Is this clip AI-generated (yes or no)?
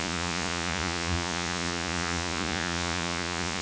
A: yes